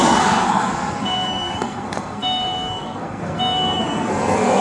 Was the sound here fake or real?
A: fake